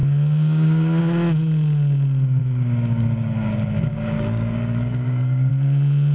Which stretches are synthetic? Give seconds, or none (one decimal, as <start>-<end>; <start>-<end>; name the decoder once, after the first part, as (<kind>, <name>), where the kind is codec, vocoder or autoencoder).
0.0-1.0 (codec, DAC); 2.4-5.5

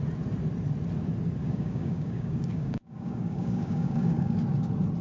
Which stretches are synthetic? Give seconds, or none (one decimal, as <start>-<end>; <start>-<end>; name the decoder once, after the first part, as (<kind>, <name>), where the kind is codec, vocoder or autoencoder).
1.4-4.4 (codec, DAC)

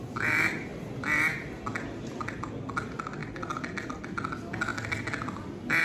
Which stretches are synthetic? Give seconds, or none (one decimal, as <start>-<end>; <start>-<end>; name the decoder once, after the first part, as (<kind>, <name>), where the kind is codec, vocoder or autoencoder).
none

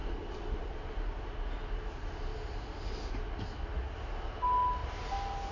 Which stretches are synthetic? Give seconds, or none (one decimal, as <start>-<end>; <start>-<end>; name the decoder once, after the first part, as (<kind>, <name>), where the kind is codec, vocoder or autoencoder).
0.0-0.6 (vocoder, BigVGAN v2); 4.8-5.5